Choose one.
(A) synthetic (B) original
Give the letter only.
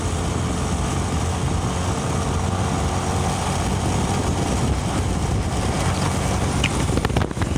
B